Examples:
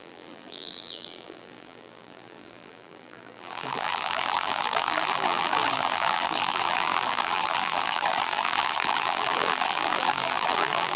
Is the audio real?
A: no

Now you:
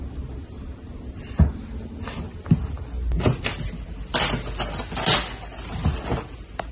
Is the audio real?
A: yes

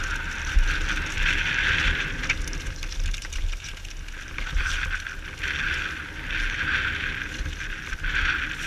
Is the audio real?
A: yes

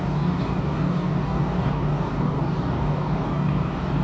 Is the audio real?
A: no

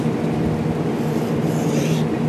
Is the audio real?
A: yes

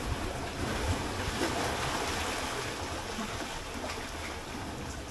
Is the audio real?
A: yes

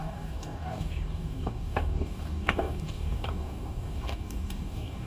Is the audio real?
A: no